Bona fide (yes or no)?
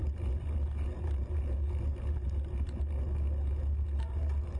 yes